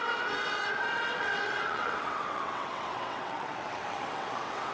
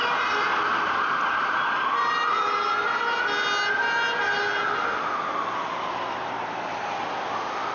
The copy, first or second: first